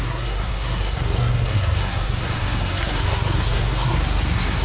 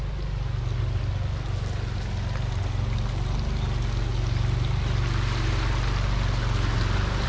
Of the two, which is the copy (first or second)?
first